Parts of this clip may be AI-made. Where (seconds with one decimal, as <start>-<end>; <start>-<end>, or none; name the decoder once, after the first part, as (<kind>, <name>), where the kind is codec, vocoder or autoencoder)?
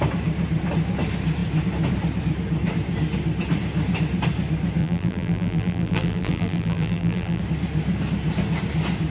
4.8-7.4 (vocoder, BigVGAN v2)